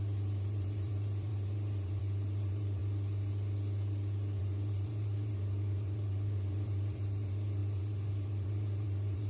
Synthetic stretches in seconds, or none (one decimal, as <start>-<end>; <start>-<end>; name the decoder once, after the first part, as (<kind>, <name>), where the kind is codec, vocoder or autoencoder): 0.0-2.8 (vocoder, BigVGAN v2); 4.4-9.3